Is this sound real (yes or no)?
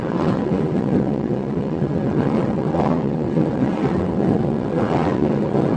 no